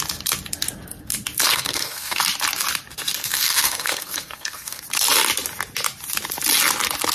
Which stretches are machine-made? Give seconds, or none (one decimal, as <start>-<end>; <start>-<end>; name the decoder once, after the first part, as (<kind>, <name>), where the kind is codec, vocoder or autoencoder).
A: 1.5-2.2 (codec, SNAC); 3.2-4.8